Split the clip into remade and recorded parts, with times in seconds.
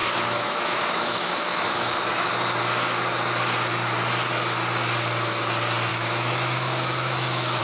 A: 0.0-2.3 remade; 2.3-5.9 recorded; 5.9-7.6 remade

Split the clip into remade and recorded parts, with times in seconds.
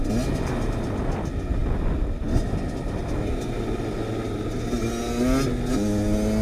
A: 0.0-6.4 recorded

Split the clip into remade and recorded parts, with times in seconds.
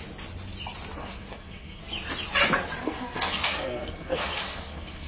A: 0.0-1.0 recorded; 1.0-1.8 remade; 1.8-2.8 recorded; 2.8-5.1 remade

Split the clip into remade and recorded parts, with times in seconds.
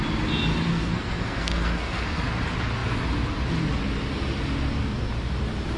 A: 0.0-0.7 recorded; 0.7-2.2 remade; 2.2-5.8 recorded